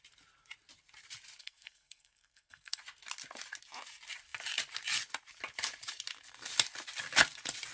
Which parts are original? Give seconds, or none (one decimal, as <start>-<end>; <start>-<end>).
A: 0.0-1.4; 2.8-7.7